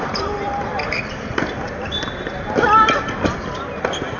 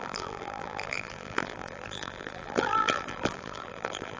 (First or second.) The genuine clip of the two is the first